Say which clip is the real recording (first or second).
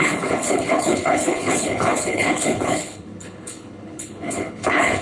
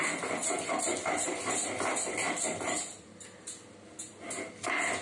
second